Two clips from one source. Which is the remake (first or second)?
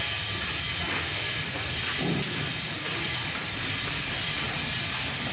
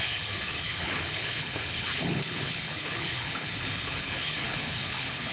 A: second